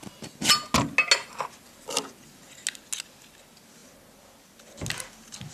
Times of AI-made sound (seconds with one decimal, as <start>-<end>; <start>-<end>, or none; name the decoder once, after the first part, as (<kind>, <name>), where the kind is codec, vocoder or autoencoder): none